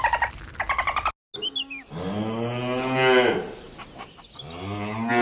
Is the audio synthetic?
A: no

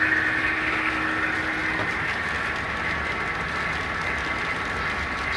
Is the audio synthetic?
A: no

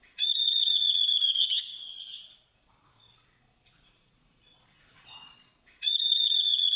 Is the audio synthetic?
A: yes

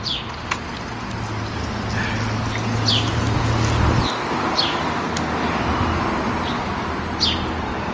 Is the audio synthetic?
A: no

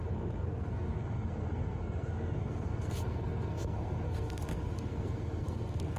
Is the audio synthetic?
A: yes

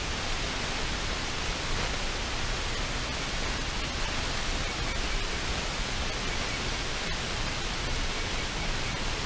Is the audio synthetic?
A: no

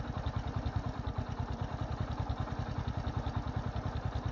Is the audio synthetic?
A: no